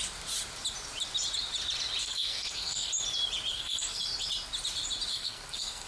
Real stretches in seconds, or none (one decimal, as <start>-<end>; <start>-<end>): 0.0-2.0; 2.9-3.5; 4.0-5.1